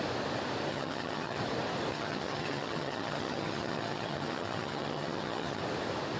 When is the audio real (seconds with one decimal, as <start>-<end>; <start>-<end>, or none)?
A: 0.0-0.7; 1.4-1.9; 5.6-6.2

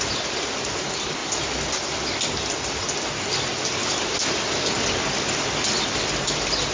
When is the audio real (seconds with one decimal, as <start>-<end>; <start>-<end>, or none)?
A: 0.0-6.7

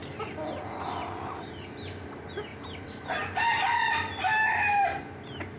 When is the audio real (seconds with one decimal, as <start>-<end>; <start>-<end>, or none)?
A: 1.7-2.5; 5.0-5.6

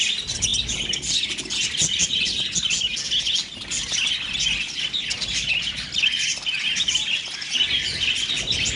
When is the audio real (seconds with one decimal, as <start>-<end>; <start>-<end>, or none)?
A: 0.0-8.8